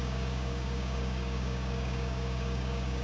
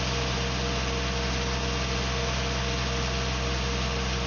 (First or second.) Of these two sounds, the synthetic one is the first